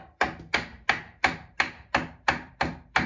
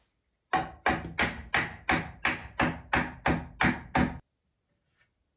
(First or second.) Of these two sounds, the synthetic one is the first